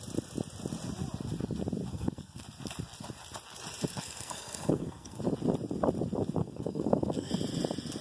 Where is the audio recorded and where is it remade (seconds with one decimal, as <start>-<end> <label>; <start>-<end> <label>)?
0.0-1.9 recorded; 1.9-2.4 remade; 2.4-3.9 recorded; 3.9-5.2 remade; 5.2-6.4 recorded; 6.4-7.3 remade; 7.3-8.0 recorded